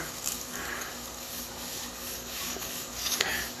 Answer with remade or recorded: remade